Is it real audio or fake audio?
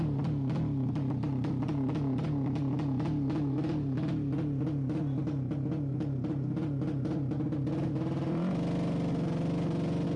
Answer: real